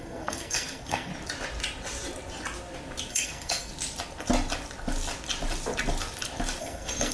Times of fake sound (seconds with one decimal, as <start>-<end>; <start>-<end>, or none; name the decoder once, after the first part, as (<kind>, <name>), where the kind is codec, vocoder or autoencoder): 0.0-1.1 (codec, SNAC); 3.1-3.7; 6.6-7.1